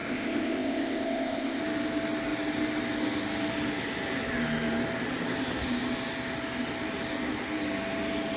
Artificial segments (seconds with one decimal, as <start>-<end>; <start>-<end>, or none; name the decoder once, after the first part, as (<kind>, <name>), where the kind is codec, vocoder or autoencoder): 0.0-1.6 (codec, ZipCodec)